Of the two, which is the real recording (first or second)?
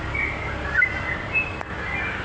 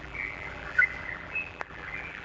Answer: first